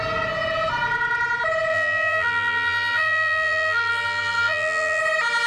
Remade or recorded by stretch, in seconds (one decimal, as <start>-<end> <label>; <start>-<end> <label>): 0.0-1.7 recorded; 1.7-5.0 remade; 5.0-5.5 recorded